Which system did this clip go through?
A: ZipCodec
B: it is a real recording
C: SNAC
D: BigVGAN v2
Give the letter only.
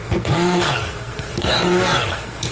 C